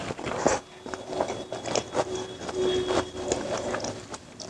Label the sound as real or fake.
real